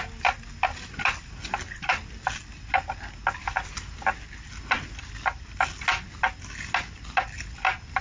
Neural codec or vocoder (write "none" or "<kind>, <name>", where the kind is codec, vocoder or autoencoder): none